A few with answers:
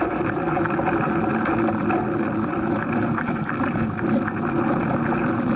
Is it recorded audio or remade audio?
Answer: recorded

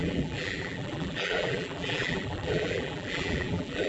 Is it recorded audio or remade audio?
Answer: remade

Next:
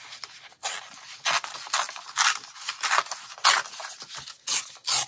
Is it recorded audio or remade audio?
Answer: recorded